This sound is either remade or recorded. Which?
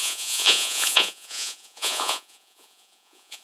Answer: remade